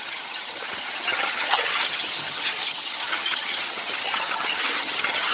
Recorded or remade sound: remade